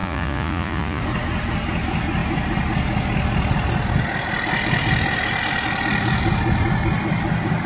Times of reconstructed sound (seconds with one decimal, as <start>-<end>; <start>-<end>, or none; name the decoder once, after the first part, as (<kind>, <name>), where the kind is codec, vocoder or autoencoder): 0.0-1.0 (vocoder, Vocos)